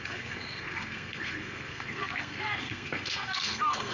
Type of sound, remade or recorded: remade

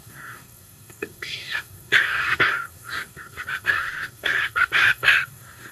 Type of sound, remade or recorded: remade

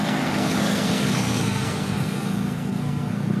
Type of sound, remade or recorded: remade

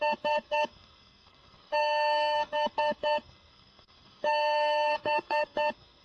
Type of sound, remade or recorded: remade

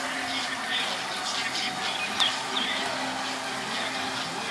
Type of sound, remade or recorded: recorded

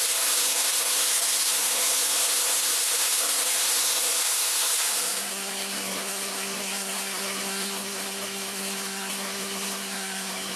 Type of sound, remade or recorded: remade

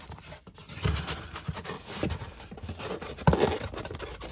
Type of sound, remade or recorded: recorded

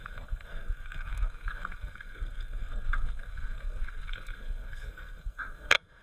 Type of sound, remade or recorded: remade